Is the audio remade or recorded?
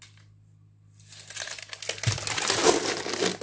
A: recorded